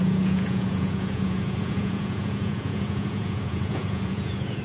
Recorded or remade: remade